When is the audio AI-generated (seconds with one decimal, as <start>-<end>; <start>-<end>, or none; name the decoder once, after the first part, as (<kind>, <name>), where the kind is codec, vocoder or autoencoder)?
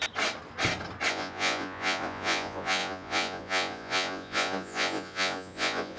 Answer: 1.1-6.0 (vocoder, Vocos)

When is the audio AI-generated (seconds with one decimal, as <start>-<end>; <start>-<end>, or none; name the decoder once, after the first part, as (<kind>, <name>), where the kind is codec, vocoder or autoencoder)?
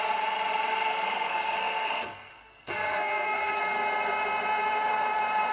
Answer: 0.9-3.6 (codec, SNAC)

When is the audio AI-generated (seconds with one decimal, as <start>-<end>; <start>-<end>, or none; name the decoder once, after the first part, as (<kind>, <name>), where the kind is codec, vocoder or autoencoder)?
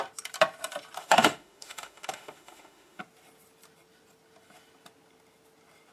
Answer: 1.0-3.0 (autoencoder, DAC-VAE)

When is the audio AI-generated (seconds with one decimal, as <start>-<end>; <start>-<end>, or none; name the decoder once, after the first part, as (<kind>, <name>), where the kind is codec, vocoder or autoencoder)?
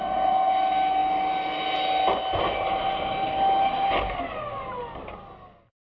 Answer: none